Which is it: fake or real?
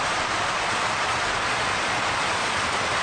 fake